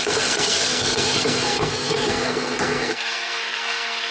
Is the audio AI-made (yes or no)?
yes